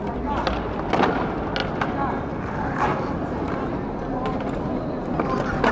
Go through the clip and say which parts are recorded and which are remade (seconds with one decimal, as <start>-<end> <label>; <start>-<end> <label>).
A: 0.0-5.7 recorded